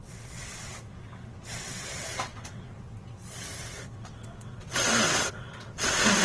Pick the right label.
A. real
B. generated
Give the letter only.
B